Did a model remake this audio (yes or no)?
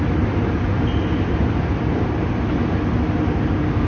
no